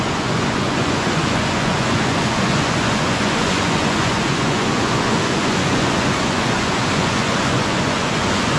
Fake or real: fake